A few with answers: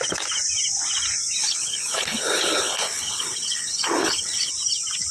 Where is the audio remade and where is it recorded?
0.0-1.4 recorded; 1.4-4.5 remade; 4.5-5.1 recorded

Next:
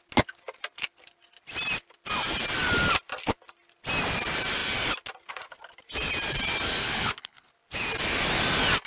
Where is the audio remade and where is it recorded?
0.0-6.8 recorded; 6.8-7.5 remade; 7.5-8.9 recorded

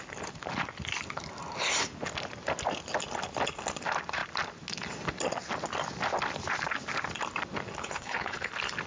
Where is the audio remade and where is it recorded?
0.0-7.8 recorded; 7.8-8.5 remade; 8.5-8.9 recorded

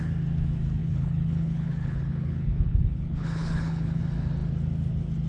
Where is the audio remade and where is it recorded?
0.0-0.8 recorded; 0.8-4.0 remade; 4.0-5.3 recorded

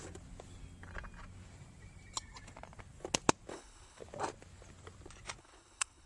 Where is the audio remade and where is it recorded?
0.0-3.5 recorded; 3.5-4.0 remade; 4.0-5.4 recorded; 5.4-6.1 remade

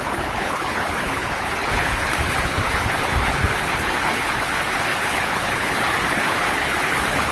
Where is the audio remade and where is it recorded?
0.0-7.3 remade

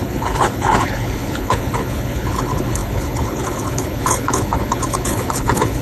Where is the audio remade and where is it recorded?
0.0-5.8 remade

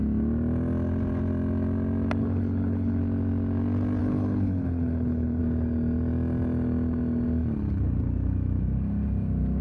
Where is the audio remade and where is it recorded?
0.0-2.2 recorded; 2.2-3.0 remade; 3.0-4.0 recorded; 4.0-5.4 remade; 5.4-9.6 recorded